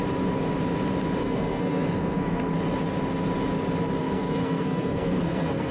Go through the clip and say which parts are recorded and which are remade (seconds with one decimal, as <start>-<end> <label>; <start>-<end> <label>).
0.0-1.2 recorded; 1.2-2.4 remade; 2.4-4.0 recorded; 4.0-5.7 remade